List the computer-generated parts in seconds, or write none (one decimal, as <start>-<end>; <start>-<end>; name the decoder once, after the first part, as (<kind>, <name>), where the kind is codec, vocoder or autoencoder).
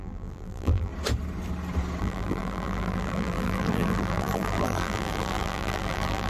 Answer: 0.0-0.9 (vocoder, BigVGAN v2); 2.0-6.3